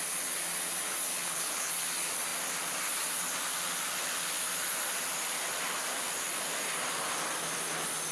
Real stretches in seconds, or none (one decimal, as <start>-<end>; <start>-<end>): 0.0-1.1; 1.7-8.1